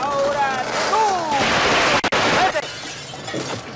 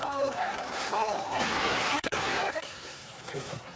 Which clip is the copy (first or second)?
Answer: second